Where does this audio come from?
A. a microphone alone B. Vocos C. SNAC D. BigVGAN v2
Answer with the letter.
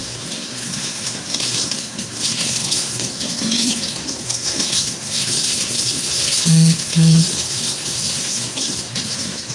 C